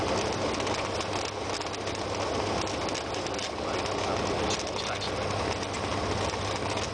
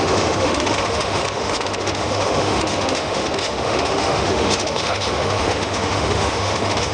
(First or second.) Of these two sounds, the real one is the first